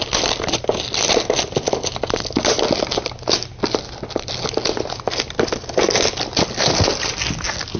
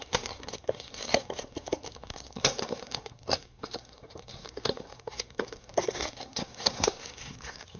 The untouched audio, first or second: first